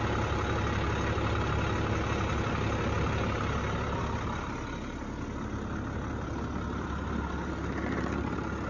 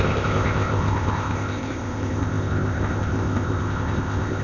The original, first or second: first